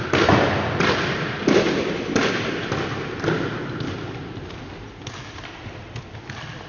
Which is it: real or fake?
real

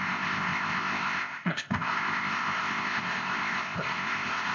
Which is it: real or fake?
fake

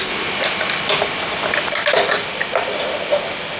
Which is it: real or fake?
real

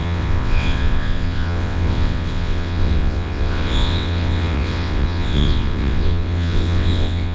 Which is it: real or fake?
fake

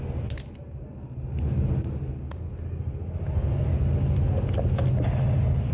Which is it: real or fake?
real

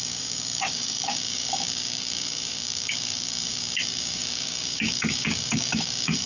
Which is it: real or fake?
fake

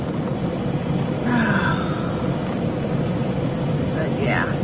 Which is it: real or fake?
real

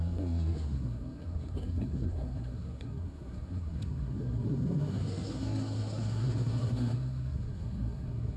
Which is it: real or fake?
fake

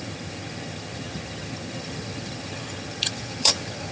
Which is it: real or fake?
fake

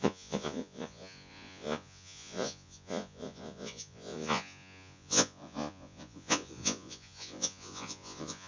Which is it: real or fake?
fake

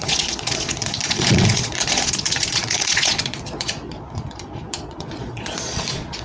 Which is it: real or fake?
fake